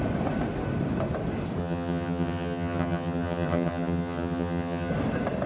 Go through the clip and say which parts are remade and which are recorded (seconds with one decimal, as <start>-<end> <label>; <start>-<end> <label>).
0.0-1.6 recorded; 1.6-4.9 remade; 4.9-5.5 recorded